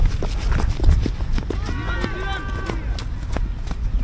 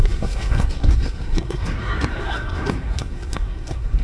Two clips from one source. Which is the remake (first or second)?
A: second